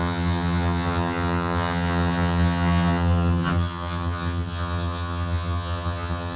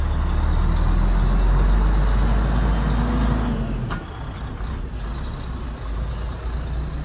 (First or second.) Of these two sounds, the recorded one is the second